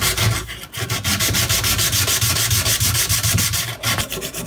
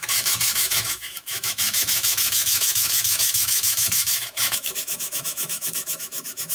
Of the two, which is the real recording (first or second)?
first